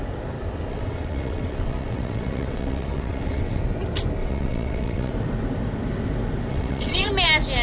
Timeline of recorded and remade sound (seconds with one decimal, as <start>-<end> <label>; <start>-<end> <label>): 0.0-0.7 recorded; 0.7-3.6 remade; 3.6-4.2 recorded; 4.2-5.1 remade; 5.1-6.5 recorded; 6.5-7.1 remade; 7.1-7.6 recorded